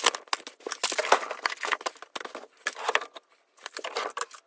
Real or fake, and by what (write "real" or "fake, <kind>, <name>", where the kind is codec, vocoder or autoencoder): real